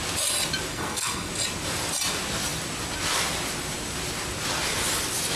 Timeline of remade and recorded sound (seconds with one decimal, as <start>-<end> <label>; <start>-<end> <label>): 0.0-0.7 recorded; 0.7-1.3 remade; 1.3-5.4 recorded